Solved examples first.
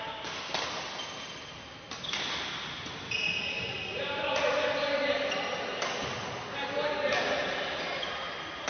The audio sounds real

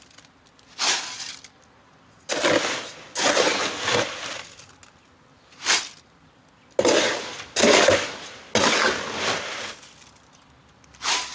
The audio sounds real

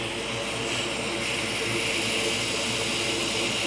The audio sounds real